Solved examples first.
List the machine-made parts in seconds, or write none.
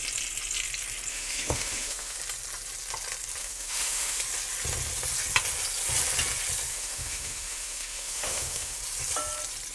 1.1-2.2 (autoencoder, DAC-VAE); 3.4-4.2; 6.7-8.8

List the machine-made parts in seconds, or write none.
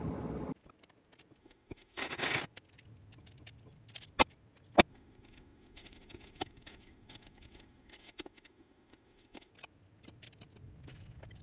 1.4-2.4 (autoencoder, DAC-VAE); 4.9-9.5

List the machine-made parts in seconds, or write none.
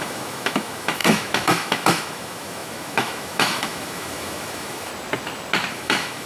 0.0-4.9 (autoencoder, DAC-VAE); 5.7-6.3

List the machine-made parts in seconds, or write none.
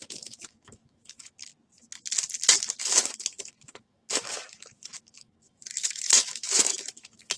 0.0-1.5 (autoencoder, DAC-VAE); 2.8-7.4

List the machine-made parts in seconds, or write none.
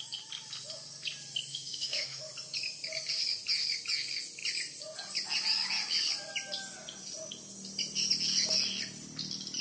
1.5-2.2 (autoencoder, DAC-VAE)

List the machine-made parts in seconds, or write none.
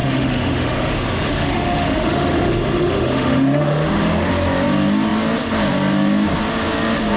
0.0-4.3 (autoencoder, DAC-VAE)